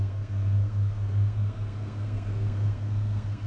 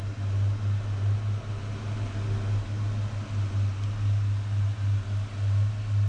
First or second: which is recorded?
second